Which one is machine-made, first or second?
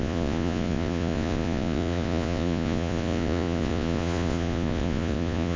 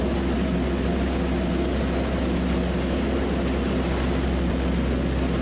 first